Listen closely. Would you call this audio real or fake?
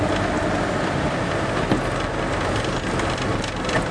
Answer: real